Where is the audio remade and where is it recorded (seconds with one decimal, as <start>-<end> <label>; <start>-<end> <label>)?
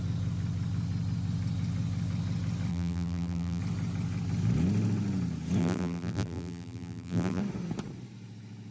0.0-2.7 recorded; 2.7-3.6 remade; 3.6-5.6 recorded; 5.6-7.4 remade; 7.4-8.7 recorded